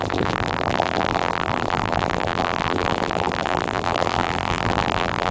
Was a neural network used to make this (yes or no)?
yes